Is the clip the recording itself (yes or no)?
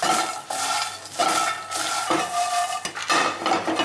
yes